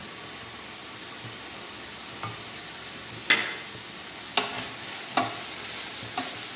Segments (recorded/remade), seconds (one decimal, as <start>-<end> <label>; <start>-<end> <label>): 0.0-6.6 recorded